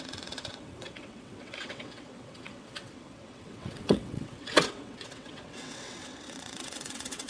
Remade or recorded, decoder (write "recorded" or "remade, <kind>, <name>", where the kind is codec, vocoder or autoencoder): remade, vocoder, WaveNeXt